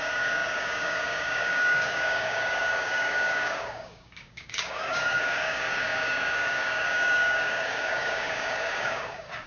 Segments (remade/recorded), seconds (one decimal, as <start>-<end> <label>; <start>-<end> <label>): 0.0-9.5 remade